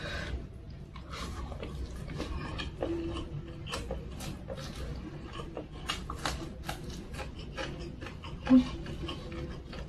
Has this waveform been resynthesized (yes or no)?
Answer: no